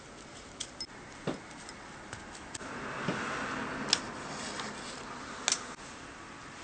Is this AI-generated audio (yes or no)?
no